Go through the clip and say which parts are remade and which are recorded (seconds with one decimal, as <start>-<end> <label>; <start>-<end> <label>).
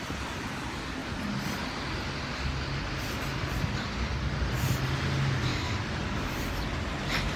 0.0-5.5 recorded; 5.5-6.4 remade; 6.4-7.4 recorded